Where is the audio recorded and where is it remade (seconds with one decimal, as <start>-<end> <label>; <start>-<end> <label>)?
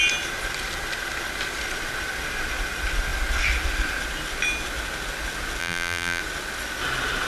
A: 0.0-5.6 recorded; 5.6-6.2 remade; 6.2-7.3 recorded